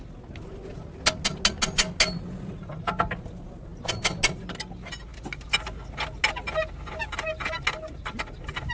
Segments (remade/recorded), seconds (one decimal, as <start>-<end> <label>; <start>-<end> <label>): 0.0-8.7 recorded